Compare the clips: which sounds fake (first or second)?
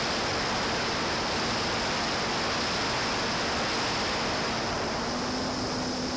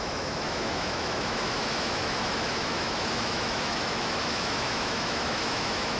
second